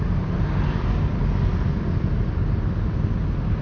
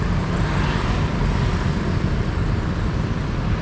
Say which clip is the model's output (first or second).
second